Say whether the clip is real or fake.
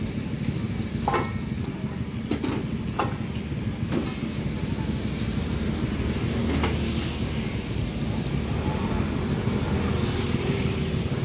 real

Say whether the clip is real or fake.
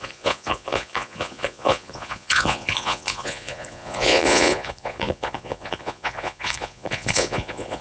fake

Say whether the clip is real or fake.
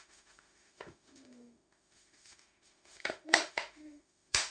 fake